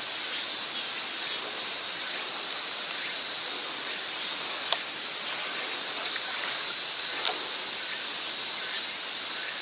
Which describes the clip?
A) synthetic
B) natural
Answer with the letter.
B